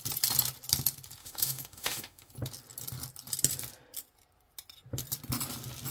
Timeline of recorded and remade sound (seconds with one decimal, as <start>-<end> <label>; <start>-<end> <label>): 0.0-1.2 recorded; 1.2-2.3 remade; 2.3-5.9 recorded